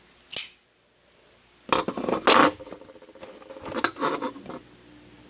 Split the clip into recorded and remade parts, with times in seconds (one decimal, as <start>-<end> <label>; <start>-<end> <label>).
0.0-5.3 recorded